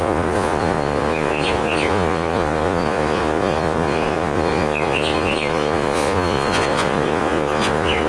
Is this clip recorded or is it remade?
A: remade